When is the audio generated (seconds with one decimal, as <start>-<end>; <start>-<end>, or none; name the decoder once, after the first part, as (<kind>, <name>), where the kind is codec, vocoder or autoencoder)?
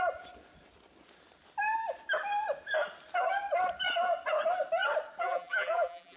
5.2-6.2 (vocoder, BigVGAN v2)